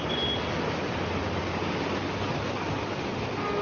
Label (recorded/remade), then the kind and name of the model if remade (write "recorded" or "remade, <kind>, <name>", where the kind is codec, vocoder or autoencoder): recorded